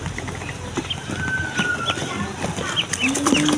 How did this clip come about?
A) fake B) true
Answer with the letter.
B